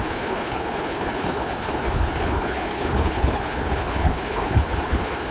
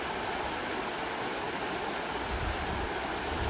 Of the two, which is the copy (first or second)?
first